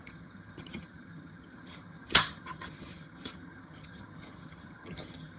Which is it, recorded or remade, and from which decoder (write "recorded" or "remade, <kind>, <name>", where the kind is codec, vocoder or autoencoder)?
remade, vocoder, HiFi-GAN